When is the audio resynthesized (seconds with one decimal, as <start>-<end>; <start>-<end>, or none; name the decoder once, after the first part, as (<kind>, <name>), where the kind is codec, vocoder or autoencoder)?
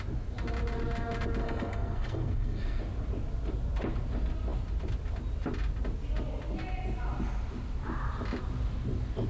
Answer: 1.4-2.8 (codec, SNAC)